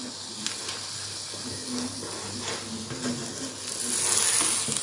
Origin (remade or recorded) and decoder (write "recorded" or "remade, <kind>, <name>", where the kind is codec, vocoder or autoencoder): recorded